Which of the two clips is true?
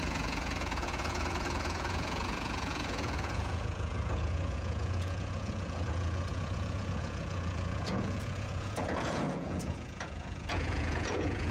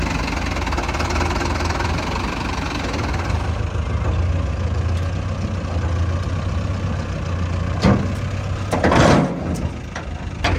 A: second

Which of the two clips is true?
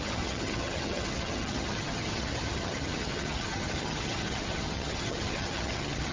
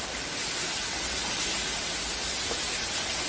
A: second